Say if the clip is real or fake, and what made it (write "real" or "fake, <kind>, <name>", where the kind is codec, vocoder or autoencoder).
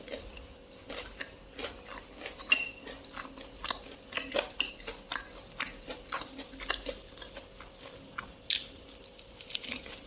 real